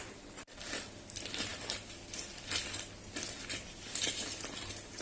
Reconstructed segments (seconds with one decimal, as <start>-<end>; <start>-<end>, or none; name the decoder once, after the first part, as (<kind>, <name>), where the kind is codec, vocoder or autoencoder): none